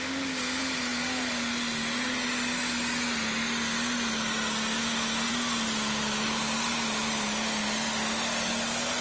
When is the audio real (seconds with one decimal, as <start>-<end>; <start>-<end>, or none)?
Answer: 0.0-9.0